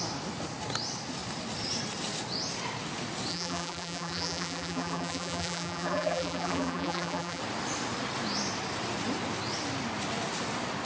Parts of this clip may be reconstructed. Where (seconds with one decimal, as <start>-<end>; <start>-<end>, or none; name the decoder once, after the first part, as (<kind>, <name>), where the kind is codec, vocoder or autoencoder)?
3.3-7.4 (vocoder, BigVGAN v2)